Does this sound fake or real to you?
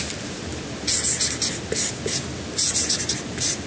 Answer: real